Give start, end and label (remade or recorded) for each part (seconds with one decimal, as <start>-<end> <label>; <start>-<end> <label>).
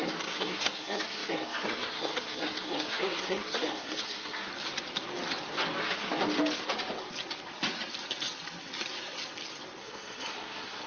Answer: 0.0-4.5 remade; 4.5-5.8 recorded; 5.8-6.2 remade; 6.2-9.8 recorded; 9.8-10.9 remade